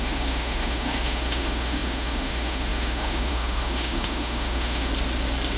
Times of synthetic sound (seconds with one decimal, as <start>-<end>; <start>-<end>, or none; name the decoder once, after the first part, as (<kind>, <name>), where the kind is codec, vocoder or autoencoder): 0.0-4.9 (autoencoder, DAC-VAE)